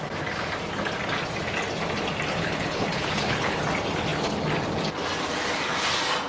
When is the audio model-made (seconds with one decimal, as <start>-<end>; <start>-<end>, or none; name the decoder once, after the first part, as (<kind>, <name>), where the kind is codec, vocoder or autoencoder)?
2.3-3.6 (codec, HILCodec)